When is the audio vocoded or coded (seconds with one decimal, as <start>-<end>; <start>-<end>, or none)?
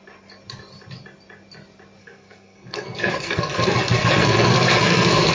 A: 2.0-5.3